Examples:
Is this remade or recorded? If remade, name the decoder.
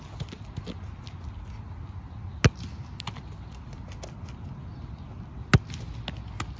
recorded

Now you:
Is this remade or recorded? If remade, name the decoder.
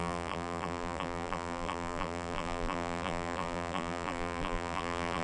remade, vocoder, BigVGAN v2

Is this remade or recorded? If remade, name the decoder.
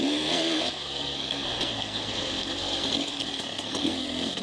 remade, codec, SNAC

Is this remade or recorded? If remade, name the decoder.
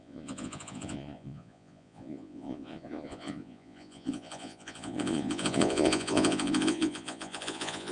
remade, vocoder, Vocos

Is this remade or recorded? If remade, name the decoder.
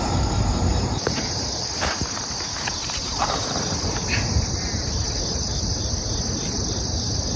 remade, vocoder, BigVGAN v2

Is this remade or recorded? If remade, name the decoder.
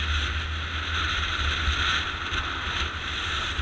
recorded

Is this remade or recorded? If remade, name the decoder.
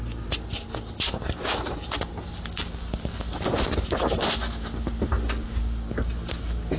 recorded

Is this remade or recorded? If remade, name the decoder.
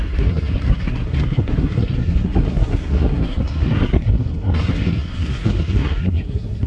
remade, codec, SNAC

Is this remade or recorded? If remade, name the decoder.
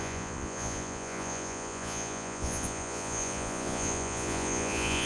remade, vocoder, Vocos